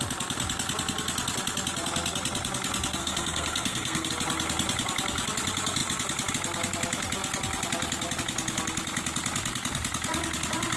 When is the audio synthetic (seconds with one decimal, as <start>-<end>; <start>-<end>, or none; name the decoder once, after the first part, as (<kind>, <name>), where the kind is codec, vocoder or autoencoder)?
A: 3.0-4.1 (codec, SNAC)